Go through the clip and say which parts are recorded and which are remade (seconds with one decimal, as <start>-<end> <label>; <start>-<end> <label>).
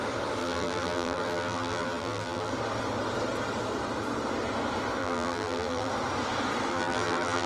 0.0-0.4 recorded; 0.4-2.5 remade; 2.5-5.0 recorded; 5.0-5.9 remade; 5.9-6.7 recorded; 6.7-7.5 remade